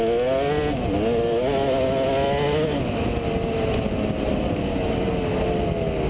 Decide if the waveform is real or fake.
real